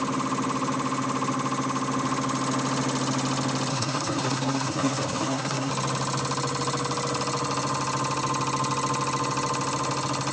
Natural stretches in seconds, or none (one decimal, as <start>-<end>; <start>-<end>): 0.0-3.7; 5.7-10.3

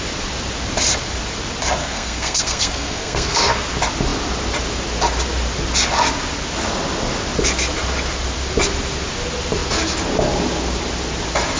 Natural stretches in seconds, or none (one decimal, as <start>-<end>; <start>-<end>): 0.0-1.8; 3.6-11.6